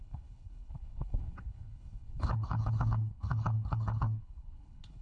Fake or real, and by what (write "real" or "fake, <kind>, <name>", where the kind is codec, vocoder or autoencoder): fake, codec, HILCodec